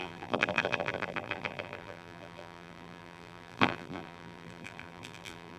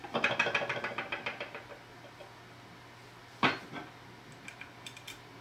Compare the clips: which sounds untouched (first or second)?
second